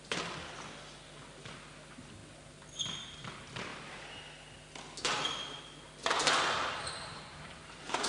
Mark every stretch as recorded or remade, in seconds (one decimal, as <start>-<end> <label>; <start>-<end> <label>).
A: 0.0-8.1 recorded